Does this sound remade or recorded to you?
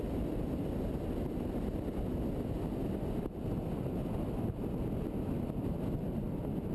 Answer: recorded